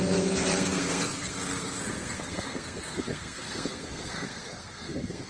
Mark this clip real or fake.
fake